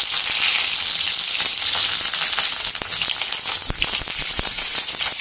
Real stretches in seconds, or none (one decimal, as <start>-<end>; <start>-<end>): 0.0-4.3